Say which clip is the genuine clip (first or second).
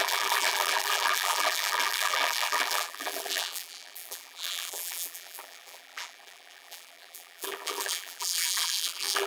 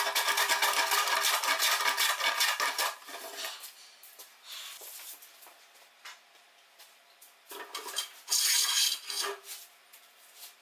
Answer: second